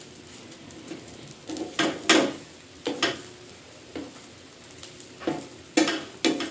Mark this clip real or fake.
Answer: real